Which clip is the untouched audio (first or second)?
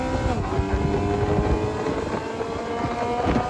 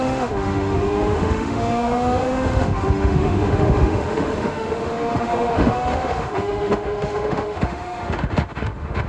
first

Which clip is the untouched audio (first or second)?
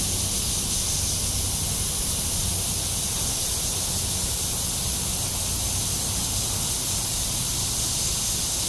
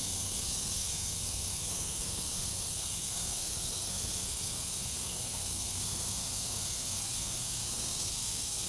first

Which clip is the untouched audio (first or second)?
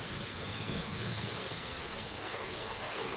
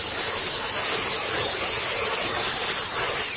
second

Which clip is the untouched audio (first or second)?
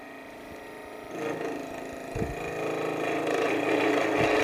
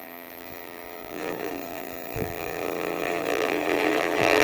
first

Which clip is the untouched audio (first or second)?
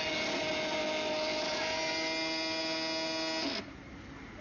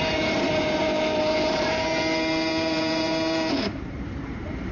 first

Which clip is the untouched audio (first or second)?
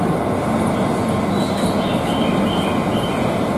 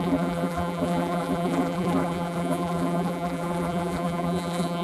first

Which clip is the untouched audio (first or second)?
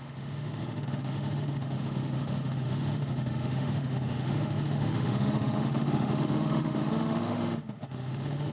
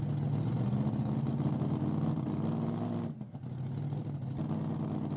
second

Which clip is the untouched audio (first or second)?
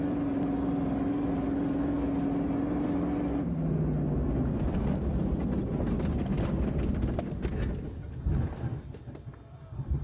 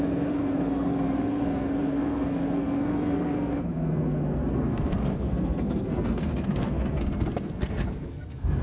first